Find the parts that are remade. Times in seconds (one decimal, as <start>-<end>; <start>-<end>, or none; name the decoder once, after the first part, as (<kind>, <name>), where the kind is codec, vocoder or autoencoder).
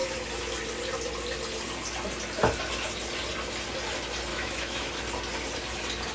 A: 4.3-4.9 (autoencoder, DAC-VAE)